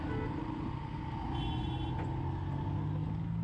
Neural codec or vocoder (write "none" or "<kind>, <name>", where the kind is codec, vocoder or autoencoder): none